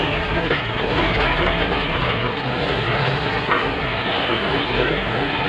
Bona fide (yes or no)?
no